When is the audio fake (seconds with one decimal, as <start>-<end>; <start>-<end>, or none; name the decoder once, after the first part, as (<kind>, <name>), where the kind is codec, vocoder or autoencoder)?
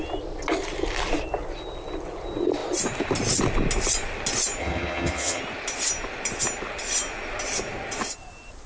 4.6-5.4 (vocoder, HiFi-GAN)